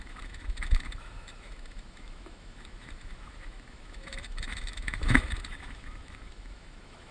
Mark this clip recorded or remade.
remade